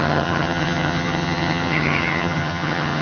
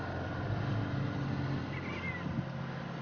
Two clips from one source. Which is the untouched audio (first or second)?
second